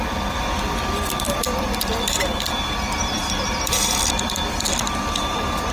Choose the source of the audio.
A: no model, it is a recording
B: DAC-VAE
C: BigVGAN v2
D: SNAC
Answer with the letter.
C